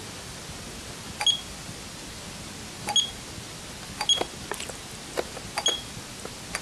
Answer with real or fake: real